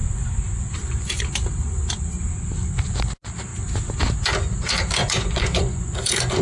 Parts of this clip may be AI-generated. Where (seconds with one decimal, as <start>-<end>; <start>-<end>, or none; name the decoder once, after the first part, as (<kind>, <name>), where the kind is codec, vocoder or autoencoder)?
0.0-1.2 (vocoder, Vocos); 5.0-6.4